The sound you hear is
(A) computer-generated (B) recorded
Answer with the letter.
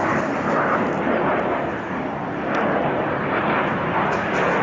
B